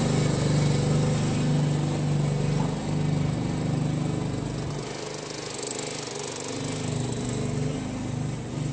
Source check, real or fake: real